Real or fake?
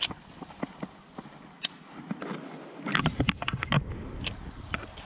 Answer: real